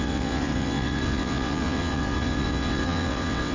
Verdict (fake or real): fake